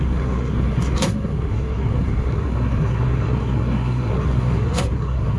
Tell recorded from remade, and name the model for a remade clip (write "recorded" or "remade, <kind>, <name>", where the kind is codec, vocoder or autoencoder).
remade, codec, SNAC